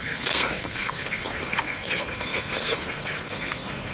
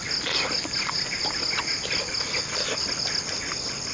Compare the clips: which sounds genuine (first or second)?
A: second